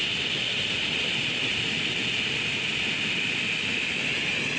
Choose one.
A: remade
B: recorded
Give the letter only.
B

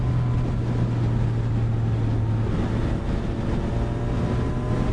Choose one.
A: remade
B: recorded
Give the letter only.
B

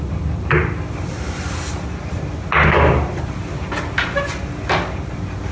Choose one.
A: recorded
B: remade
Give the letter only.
A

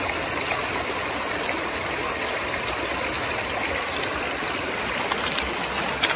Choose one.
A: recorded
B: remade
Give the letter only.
A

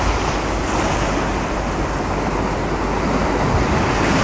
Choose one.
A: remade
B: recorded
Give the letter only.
B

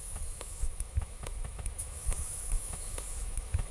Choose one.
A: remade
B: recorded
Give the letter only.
A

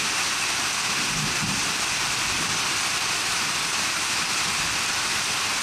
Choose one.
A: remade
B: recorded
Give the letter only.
A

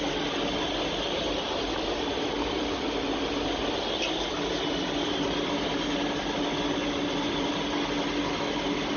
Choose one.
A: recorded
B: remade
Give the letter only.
A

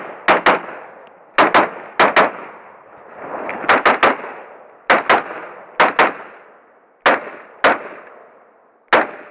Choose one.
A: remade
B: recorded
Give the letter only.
B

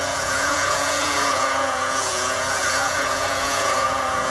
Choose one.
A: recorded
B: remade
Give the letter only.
B